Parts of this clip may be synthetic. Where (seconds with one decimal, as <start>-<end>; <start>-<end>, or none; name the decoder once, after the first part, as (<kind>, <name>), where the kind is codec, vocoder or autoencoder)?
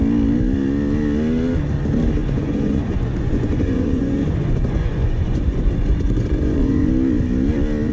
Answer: 2.2-6.9 (vocoder, Vocos)